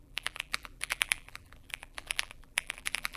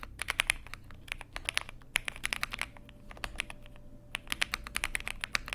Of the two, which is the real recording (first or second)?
second